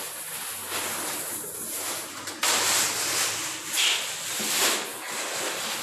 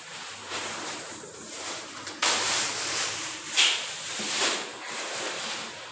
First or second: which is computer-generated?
second